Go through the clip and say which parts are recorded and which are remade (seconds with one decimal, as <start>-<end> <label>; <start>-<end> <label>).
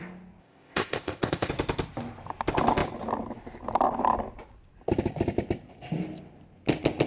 0.0-0.4 recorded; 0.4-1.5 remade; 1.5-7.1 recorded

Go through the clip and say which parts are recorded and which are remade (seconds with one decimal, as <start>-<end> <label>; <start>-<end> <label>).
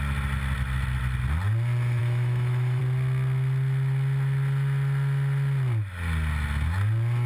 0.0-2.0 recorded; 2.0-2.8 remade; 2.8-7.3 recorded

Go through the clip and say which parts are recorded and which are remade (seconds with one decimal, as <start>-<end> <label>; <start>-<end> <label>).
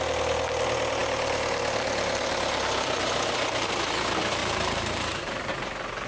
0.0-4.4 recorded; 4.4-5.5 remade; 5.5-6.1 recorded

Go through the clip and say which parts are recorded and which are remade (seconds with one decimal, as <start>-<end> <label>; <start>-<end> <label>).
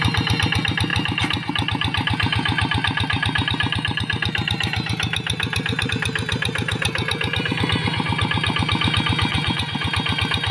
0.0-9.3 recorded; 9.3-9.9 remade; 9.9-10.5 recorded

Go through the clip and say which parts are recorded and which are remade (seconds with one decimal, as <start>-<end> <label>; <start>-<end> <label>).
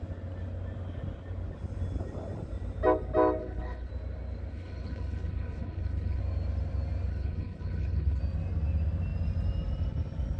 0.0-3.4 recorded; 3.4-3.9 remade; 3.9-4.5 recorded; 4.5-6.2 remade; 6.2-7.1 recorded; 7.1-8.2 remade; 8.2-10.4 recorded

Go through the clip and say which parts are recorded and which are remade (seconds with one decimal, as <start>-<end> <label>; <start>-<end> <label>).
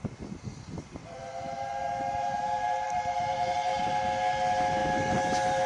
0.0-1.0 recorded; 1.0-3.9 remade; 3.9-5.7 recorded